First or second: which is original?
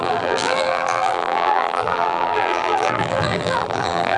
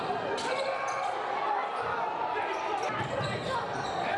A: second